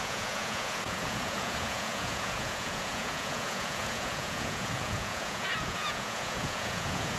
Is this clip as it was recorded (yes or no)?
no